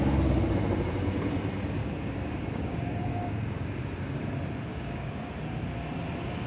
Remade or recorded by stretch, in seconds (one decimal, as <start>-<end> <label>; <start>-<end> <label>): 0.0-1.8 recorded; 1.8-3.8 remade; 3.8-4.7 recorded; 4.7-5.3 remade; 5.3-6.5 recorded